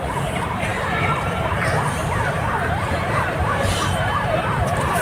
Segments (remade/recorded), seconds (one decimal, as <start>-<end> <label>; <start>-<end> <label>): 0.0-5.0 recorded